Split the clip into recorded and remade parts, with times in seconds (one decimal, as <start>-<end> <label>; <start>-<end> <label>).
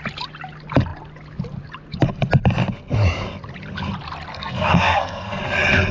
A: 0.0-4.3 recorded; 4.3-5.4 remade; 5.4-5.9 recorded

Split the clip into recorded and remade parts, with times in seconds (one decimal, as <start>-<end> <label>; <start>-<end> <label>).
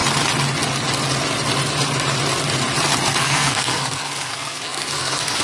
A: 0.0-3.2 recorded; 3.2-5.4 remade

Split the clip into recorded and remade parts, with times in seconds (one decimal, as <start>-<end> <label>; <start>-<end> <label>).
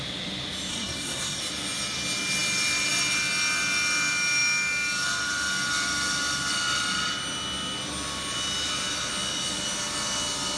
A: 0.0-0.7 recorded; 0.7-1.4 remade; 1.4-10.6 recorded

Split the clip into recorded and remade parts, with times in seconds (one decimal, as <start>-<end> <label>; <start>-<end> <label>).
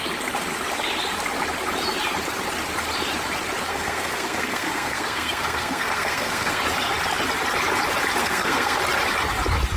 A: 0.0-3.7 recorded; 3.7-6.6 remade; 6.6-8.2 recorded; 8.2-8.8 remade; 8.8-9.8 recorded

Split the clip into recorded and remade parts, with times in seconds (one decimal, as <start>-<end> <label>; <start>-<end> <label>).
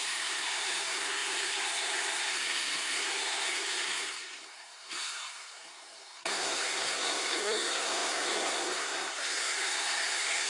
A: 0.0-10.5 remade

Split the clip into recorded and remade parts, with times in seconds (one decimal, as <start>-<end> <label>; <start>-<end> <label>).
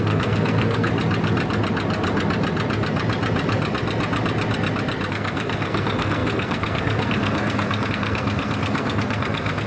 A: 0.0-0.9 remade; 0.9-5.1 recorded; 5.1-9.7 remade